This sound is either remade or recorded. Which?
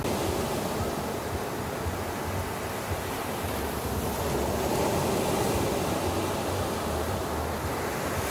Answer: recorded